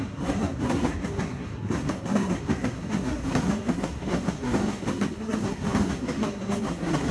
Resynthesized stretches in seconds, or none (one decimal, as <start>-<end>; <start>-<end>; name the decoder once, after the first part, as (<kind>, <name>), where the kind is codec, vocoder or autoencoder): 0.0-7.1 (codec, SNAC)